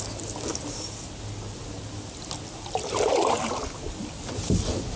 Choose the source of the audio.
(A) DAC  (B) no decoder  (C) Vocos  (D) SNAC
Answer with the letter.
B